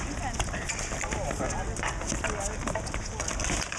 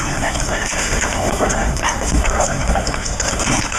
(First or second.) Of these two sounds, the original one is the first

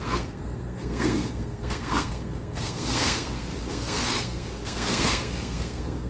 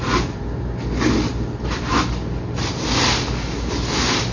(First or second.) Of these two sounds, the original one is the second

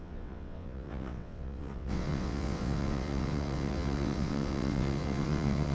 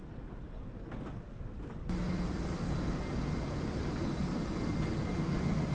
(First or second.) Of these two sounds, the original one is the second